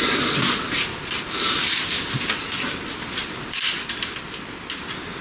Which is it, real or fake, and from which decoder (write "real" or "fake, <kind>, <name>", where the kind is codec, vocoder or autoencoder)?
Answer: real